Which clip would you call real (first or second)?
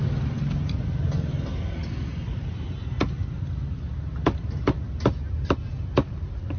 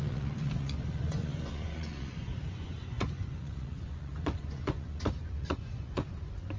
first